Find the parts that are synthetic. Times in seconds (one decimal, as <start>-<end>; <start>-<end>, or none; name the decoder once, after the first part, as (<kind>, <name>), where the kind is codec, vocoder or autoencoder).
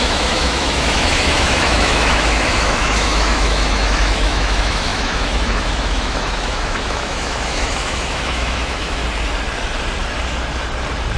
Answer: 0.0-9.0 (autoencoder, DAC-VAE)